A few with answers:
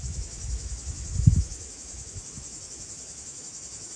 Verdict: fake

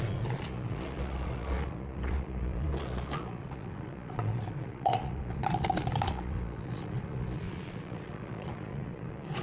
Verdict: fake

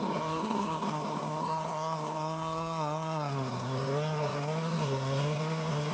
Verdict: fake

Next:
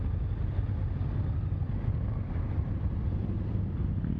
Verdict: real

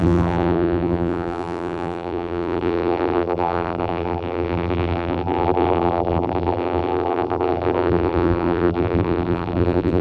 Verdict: fake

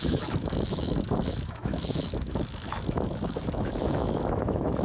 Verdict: fake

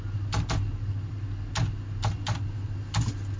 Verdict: real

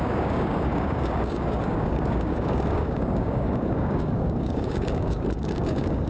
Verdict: fake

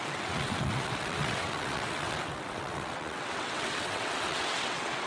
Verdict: fake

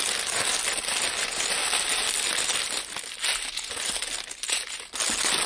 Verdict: real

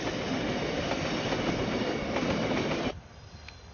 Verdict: real